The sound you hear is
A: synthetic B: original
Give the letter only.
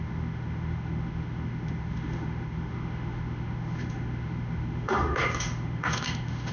A